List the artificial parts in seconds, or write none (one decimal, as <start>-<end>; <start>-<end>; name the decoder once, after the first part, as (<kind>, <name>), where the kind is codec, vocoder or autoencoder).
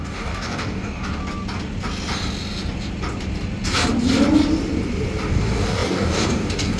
0.0-1.2 (codec, DAC); 5.3-6.8